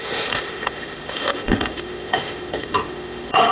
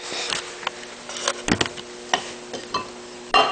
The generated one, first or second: first